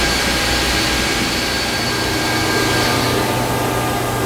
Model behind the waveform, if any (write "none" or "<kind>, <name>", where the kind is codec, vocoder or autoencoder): none